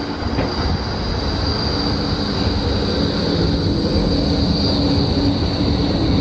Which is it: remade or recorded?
recorded